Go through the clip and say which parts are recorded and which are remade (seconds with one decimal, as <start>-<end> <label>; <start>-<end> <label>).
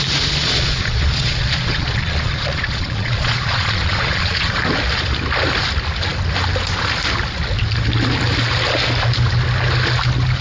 0.0-0.4 recorded; 0.4-4.6 remade; 4.6-10.4 recorded